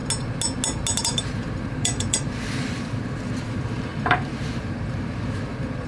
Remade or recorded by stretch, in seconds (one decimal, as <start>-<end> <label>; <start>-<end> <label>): 0.0-1.0 recorded; 1.0-5.9 remade